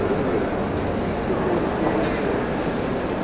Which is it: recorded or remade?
recorded